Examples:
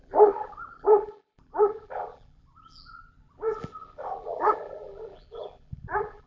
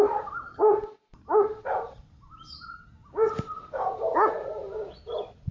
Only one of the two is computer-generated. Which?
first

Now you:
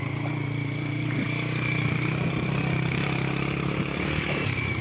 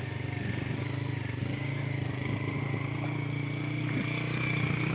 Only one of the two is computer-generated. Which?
first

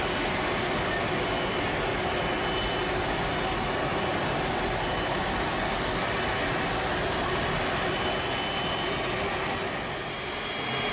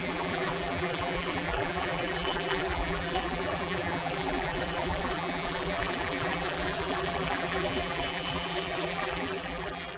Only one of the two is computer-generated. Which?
second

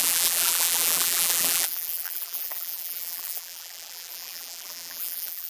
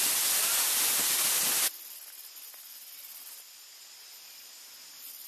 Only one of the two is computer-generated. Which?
first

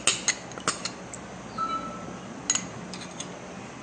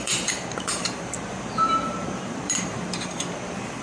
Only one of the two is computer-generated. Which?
second